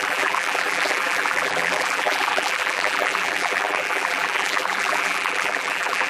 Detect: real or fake fake